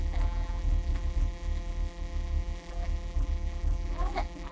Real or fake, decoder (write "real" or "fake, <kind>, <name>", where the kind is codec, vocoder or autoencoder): fake, vocoder, BigVGAN v2